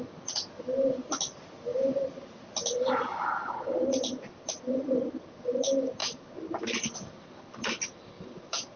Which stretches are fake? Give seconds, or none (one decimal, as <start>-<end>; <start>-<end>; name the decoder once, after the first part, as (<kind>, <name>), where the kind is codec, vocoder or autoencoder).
none